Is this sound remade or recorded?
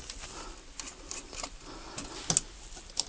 recorded